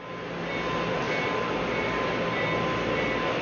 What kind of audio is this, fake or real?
real